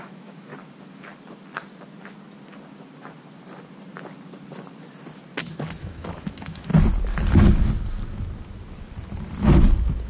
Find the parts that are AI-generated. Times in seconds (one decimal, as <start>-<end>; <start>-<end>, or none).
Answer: 0.0-0.5; 5.8-6.7